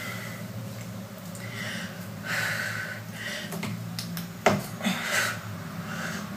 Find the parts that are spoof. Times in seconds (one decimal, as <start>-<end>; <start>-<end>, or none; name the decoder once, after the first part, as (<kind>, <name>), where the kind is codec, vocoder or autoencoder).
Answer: none